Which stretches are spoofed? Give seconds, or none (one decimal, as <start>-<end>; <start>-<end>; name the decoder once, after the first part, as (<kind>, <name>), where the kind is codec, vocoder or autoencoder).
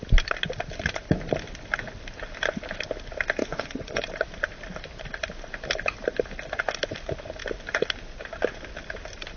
3.4-4.0 (vocoder, Vocos)